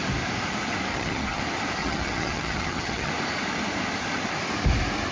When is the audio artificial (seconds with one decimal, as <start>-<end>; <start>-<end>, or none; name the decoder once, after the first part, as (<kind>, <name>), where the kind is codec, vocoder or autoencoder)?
0.9-1.4 (vocoder, HiFi-GAN); 1.8-3.1